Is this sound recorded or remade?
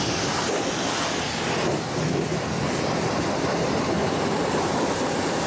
recorded